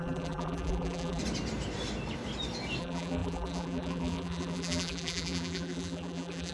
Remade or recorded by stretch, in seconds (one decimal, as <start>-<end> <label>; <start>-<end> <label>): 0.0-1.2 remade; 1.2-2.8 recorded; 2.8-6.5 remade